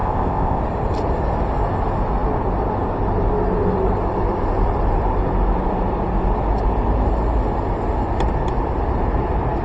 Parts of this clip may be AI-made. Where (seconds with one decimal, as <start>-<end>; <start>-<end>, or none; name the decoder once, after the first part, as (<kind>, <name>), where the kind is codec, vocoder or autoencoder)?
0.0-0.6 (codec, ZipCodec)